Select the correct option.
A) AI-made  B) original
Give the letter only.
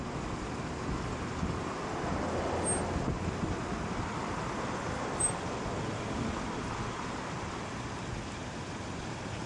B